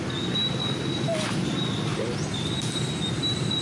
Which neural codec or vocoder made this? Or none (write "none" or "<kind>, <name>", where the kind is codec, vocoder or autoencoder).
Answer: none